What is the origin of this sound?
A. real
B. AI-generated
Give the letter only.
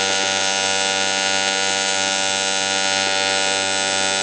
A